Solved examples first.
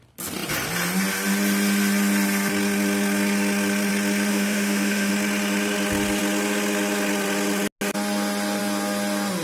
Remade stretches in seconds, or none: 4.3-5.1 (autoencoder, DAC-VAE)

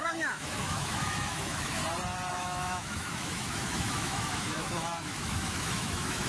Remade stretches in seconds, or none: 0.0-1.8 (autoencoder, DAC-VAE); 2.3-6.3

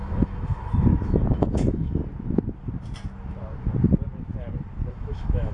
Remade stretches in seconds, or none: 0.0-2.0 (autoencoder, DAC-VAE); 4.9-5.5

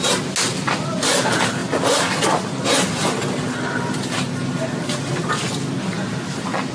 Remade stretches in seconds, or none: none

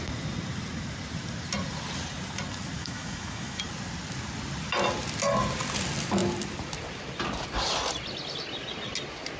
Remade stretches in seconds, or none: 2.8-3.6 (autoencoder, DAC-VAE)

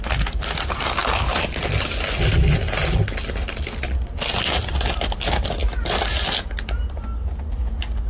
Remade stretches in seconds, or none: none